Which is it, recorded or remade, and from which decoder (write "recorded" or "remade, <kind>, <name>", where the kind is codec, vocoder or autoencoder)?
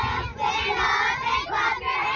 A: recorded